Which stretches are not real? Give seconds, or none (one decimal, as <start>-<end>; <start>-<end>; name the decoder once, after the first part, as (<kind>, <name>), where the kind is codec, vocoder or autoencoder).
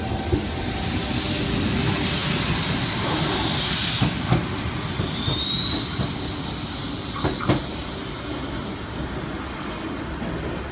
8.7-9.7 (vocoder, BigVGAN v2)